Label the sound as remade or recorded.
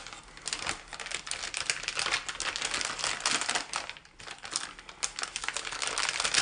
recorded